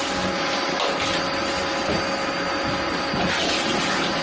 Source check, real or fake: real